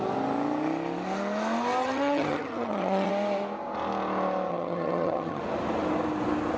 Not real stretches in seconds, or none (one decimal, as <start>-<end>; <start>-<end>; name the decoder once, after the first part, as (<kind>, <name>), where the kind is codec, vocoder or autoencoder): 1.8-3.1 (vocoder, HiFi-GAN); 4.5-5.4